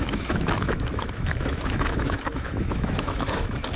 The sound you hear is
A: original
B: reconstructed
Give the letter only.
B